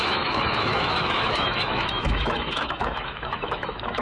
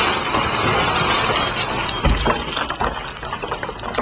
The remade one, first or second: first